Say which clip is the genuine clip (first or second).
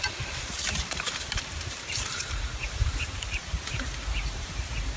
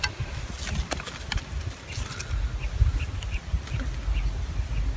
second